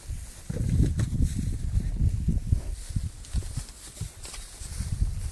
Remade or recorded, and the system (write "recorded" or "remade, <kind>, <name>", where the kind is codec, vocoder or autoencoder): recorded